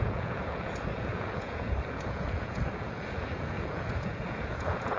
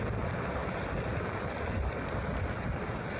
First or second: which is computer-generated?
first